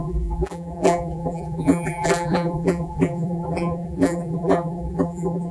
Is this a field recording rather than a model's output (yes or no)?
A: no